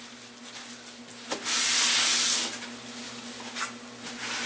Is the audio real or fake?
real